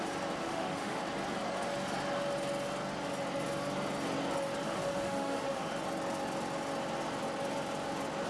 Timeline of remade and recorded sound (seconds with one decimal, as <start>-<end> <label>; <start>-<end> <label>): 0.0-0.4 recorded; 0.4-1.0 remade; 1.0-4.6 recorded; 4.6-5.7 remade; 5.7-8.3 recorded